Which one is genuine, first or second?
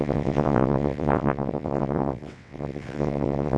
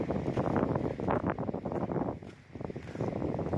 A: second